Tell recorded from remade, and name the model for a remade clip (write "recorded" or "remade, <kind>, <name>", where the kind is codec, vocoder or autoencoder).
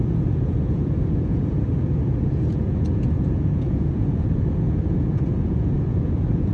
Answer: remade, vocoder, Vocos